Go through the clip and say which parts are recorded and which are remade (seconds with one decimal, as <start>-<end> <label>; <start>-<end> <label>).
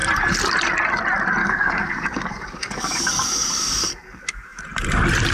0.0-1.4 recorded; 1.4-4.6 remade; 4.6-5.3 recorded